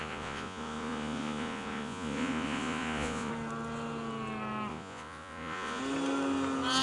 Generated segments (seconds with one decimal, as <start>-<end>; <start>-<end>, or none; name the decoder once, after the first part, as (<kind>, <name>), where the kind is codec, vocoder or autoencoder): 0.0-3.3 (vocoder, Vocos); 4.7-5.8